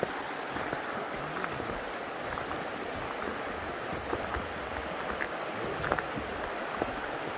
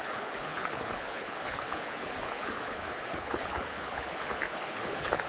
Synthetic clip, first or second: second